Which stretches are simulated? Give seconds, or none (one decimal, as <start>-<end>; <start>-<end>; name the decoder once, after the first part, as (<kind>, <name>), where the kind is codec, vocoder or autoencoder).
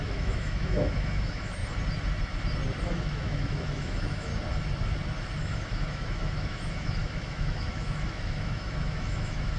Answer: 0.0-1.6 (autoencoder, DAC-VAE); 2.8-4.3; 5.4-9.6